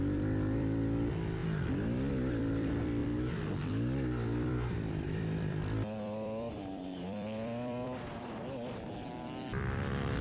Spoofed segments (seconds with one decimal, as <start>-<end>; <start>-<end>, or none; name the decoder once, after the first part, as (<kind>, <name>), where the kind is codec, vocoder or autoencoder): 0.0-1.4 (vocoder, BigVGAN v2); 2.1-3.0; 3.5-10.2